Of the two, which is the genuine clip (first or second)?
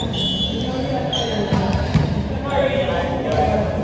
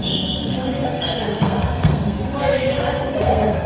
first